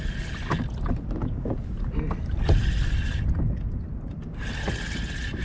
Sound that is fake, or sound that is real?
real